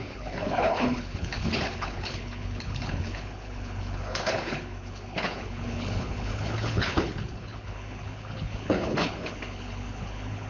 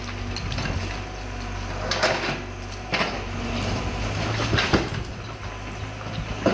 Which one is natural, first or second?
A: second